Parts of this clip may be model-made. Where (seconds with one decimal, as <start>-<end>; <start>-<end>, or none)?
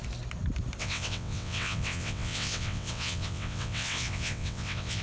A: 0.8-5.0